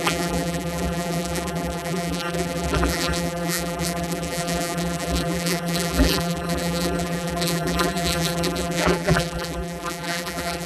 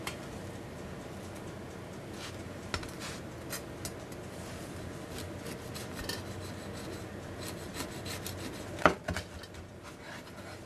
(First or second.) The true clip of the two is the second